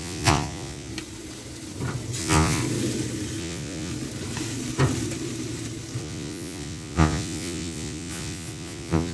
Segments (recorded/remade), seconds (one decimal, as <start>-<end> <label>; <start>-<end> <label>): 0.0-0.9 remade; 0.9-2.2 recorded; 2.2-2.6 remade; 2.6-3.4 recorded; 3.4-3.9 remade; 3.9-6.0 recorded; 6.0-9.1 remade